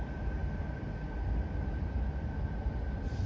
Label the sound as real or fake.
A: real